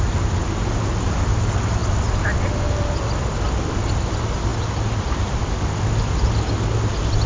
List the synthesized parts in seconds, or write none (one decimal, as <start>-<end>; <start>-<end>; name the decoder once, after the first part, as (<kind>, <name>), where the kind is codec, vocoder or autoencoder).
none